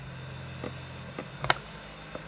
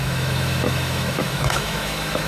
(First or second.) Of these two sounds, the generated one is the second